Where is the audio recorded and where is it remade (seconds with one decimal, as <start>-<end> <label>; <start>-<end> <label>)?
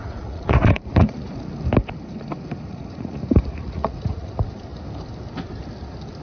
0.0-1.5 remade; 1.5-2.7 recorded; 2.7-4.3 remade; 4.3-6.2 recorded